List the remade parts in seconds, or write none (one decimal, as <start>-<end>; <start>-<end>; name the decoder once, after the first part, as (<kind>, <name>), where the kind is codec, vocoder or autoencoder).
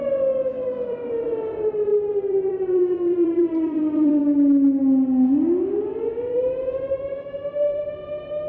0.5-1.1 (vocoder, BigVGAN v2); 1.9-4.2; 7.4-7.9